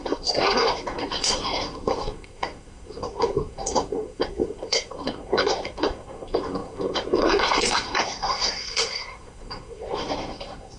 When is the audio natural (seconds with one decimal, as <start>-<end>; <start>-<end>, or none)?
none